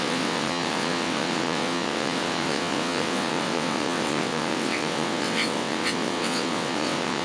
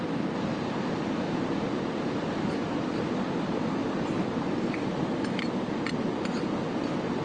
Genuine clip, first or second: second